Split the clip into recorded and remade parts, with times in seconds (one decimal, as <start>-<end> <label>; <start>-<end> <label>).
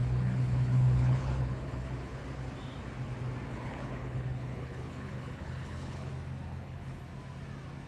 0.0-2.2 remade; 2.2-3.5 recorded; 3.5-6.1 remade; 6.1-6.5 recorded; 6.5-7.0 remade; 7.0-7.9 recorded